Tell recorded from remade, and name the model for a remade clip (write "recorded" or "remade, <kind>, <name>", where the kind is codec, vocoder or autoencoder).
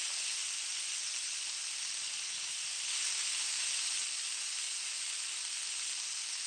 recorded